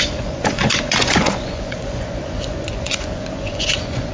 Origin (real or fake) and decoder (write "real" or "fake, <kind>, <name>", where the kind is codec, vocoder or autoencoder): fake, vocoder, Vocos